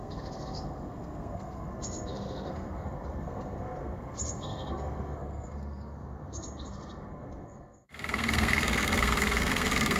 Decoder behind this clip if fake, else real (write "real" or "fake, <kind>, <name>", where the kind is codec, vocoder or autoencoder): fake, codec, SNAC